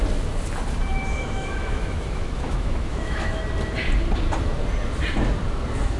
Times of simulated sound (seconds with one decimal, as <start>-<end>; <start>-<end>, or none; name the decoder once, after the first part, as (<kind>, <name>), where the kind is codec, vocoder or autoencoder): 0.9-3.4 (autoencoder, DAC-VAE)